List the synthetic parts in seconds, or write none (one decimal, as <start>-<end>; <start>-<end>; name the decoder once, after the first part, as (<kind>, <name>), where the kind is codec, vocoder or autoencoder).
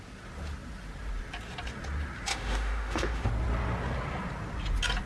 2.3-3.3 (autoencoder, DAC-VAE)